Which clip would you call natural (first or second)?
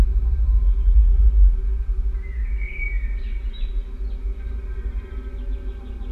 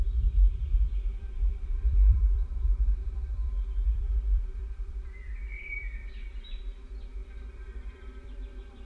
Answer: first